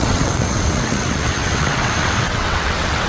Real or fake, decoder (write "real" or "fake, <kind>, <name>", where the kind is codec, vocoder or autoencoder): fake, vocoder, WaveNeXt